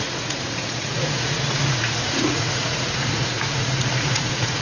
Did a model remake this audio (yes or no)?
yes